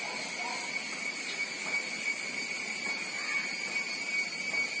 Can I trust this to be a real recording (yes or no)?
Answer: yes